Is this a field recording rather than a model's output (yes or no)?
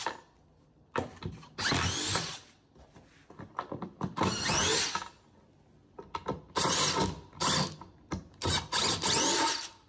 yes